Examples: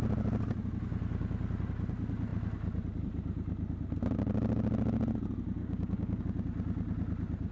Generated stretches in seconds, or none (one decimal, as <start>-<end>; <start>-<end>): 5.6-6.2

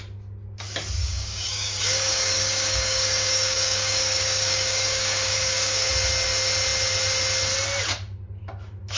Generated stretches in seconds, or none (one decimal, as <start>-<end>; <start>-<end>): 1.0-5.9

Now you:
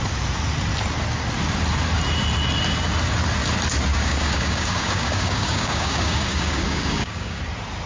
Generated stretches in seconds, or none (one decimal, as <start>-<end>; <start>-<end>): 3.9-7.4